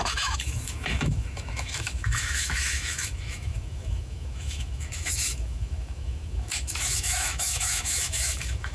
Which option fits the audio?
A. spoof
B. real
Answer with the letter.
A